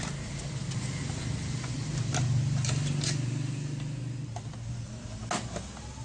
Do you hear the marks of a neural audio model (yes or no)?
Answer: no